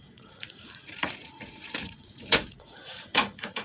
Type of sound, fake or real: fake